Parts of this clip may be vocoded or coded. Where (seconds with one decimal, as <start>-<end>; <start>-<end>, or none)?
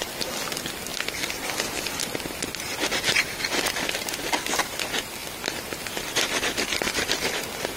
0.0-0.9; 1.6-7.8